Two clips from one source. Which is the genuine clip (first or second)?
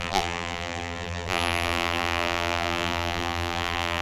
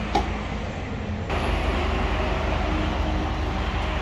second